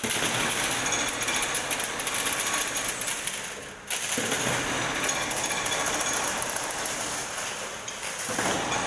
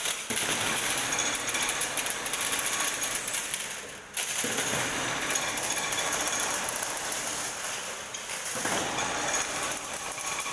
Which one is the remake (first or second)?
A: second